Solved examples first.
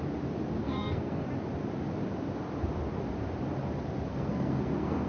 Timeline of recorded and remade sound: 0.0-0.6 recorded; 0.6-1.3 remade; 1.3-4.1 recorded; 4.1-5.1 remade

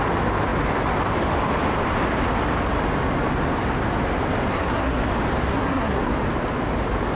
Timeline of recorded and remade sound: 0.0-4.5 recorded; 4.5-5.0 remade; 5.0-5.5 recorded; 5.5-6.1 remade; 6.1-7.1 recorded